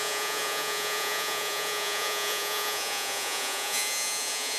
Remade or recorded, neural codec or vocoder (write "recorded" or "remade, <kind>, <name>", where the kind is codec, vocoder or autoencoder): remade, vocoder, Vocos